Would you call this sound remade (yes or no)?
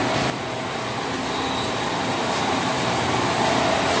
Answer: no